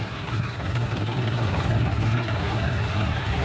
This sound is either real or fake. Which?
fake